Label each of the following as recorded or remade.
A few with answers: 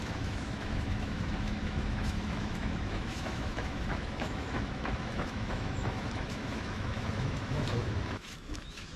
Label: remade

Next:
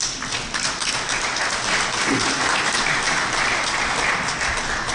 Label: recorded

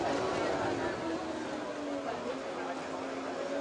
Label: recorded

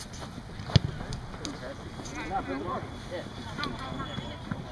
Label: recorded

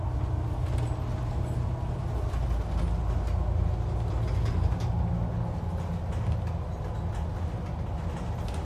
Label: recorded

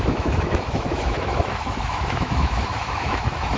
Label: remade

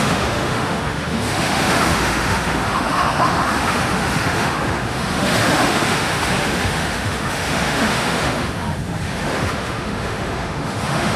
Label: remade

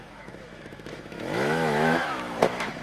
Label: remade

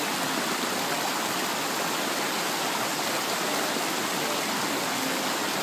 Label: recorded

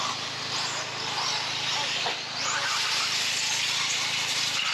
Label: recorded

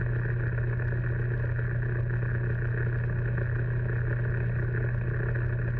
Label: recorded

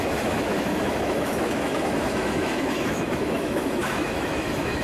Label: remade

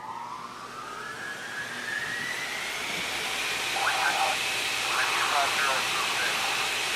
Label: recorded